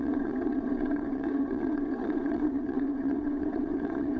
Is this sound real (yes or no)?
no